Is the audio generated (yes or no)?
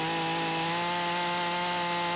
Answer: no